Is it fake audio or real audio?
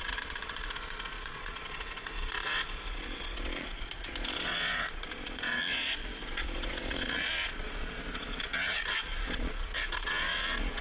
fake